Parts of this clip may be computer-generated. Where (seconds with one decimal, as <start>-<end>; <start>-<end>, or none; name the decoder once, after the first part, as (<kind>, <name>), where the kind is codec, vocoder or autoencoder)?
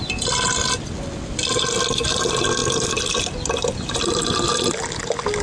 none